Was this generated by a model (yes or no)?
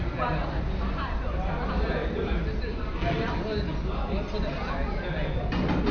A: no